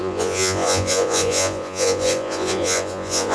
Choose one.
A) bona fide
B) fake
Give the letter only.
B